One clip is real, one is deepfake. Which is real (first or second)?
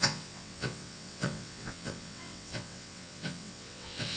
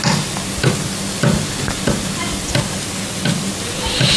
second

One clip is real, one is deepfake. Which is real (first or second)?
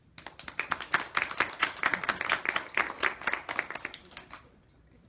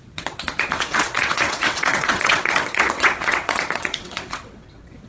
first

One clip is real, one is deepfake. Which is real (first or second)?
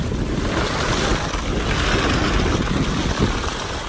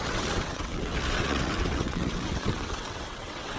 first